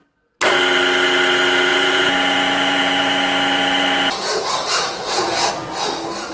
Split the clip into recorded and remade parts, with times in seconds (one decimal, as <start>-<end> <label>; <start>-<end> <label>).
0.0-1.7 recorded; 1.7-5.5 remade; 5.5-6.3 recorded